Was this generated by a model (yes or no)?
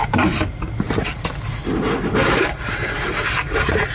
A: no